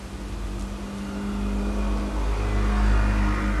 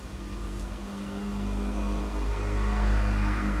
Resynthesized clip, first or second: second